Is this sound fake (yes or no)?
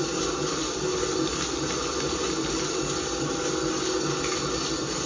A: no